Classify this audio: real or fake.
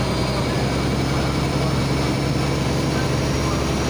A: real